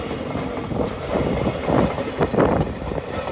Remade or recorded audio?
recorded